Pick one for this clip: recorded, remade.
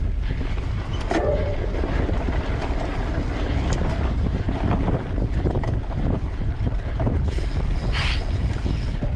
recorded